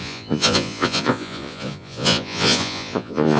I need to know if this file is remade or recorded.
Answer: remade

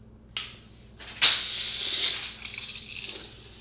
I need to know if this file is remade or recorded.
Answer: recorded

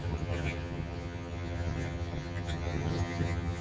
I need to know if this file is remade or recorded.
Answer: remade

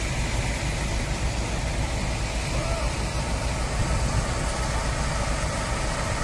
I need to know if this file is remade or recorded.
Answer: recorded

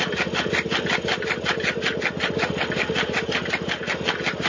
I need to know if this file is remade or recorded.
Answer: recorded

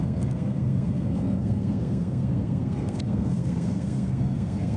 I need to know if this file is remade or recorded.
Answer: remade